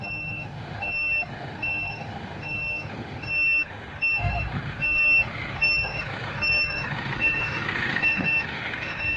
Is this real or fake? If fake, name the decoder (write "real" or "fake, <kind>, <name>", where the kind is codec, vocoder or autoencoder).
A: fake, autoencoder, DAC-VAE